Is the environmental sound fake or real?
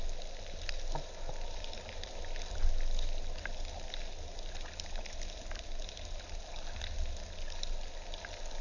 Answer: real